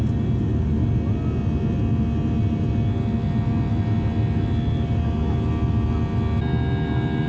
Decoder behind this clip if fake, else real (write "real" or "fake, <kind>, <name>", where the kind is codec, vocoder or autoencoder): real